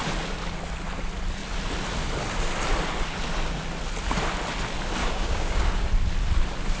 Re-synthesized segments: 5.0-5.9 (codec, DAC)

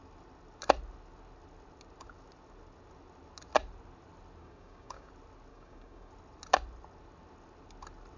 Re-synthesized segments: 4.4-5.1 (codec, DAC); 5.5-6.1